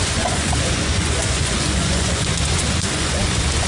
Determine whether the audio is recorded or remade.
remade